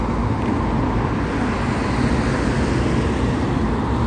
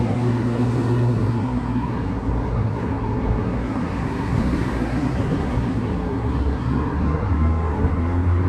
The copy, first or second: second